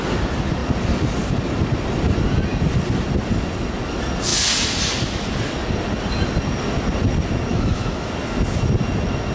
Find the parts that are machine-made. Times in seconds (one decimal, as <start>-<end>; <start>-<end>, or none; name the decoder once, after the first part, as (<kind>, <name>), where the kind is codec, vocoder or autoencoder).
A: 7.5-8.1 (autoencoder, DAC-VAE)